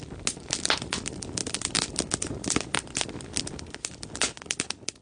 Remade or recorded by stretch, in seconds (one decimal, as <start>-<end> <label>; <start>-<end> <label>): 0.0-5.0 recorded